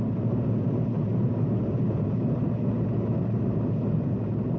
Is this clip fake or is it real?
fake